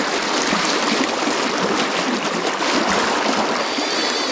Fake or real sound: real